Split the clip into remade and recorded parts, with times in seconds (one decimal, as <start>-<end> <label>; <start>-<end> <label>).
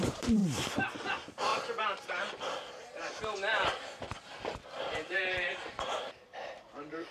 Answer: 0.0-0.4 remade; 0.4-1.1 recorded; 1.1-1.5 remade; 1.5-4.8 recorded; 4.8-7.1 remade